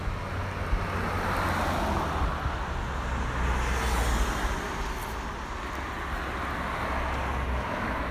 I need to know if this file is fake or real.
real